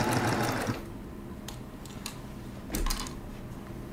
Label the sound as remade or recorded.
remade